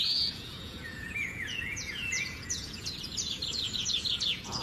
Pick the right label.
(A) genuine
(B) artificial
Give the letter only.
B